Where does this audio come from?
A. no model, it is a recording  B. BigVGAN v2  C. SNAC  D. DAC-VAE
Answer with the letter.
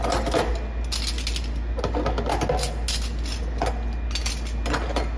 A